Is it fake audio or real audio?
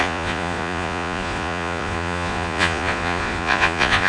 fake